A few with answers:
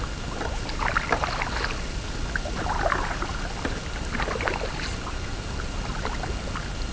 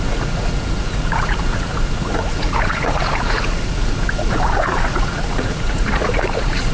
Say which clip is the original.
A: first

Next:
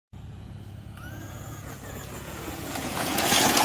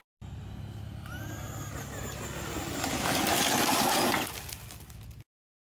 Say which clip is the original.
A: second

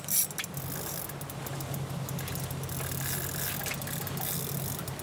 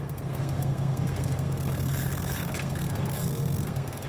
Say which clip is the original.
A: first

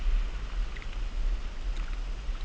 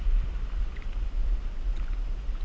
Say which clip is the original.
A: first